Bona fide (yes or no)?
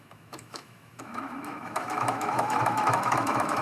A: no